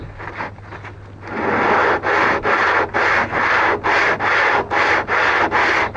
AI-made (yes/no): no